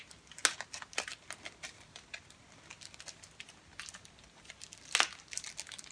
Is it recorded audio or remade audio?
recorded